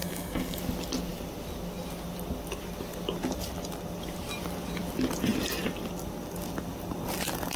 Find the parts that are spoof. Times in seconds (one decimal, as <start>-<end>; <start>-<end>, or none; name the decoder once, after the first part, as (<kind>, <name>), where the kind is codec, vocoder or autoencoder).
0.0-0.6 (codec, SNAC)